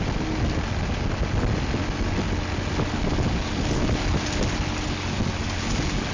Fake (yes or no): no